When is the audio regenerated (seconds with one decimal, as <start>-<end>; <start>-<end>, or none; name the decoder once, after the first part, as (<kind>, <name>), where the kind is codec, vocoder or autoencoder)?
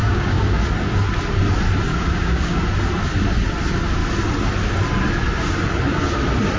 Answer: 0.0-0.6 (codec, DAC); 1.9-2.6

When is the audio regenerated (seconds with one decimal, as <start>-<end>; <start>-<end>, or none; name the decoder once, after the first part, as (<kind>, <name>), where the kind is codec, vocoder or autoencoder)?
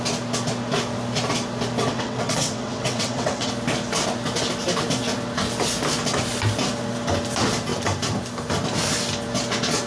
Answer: 1.8-3.5 (vocoder, WaveNeXt)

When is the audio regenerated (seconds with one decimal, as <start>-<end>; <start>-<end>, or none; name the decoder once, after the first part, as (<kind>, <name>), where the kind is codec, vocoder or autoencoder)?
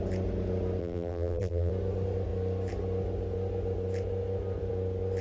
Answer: 0.8-1.7 (vocoder, BigVGAN v2)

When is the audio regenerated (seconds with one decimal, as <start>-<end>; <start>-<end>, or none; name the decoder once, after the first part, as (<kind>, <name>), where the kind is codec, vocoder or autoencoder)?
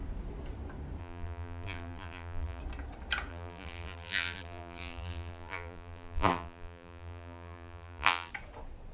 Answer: 1.0-2.6 (vocoder, BigVGAN v2); 3.3-8.3